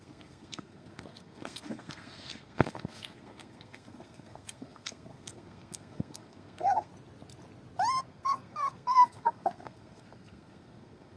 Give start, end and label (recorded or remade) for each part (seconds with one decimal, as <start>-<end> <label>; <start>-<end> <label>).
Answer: 0.0-6.9 remade; 6.9-8.0 recorded; 8.0-11.2 remade